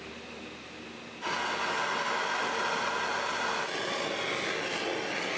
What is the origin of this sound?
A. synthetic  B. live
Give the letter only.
B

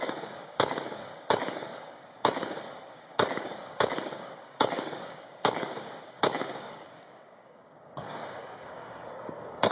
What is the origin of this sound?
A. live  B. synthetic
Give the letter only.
B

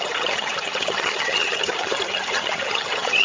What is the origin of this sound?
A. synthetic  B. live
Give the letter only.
A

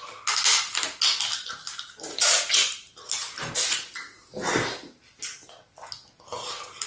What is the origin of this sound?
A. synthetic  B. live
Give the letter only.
B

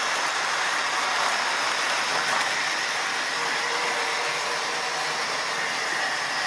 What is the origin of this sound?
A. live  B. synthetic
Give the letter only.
A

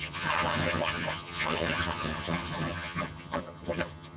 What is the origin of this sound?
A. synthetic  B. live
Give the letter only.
A